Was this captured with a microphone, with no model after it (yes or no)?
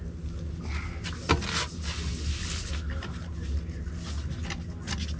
yes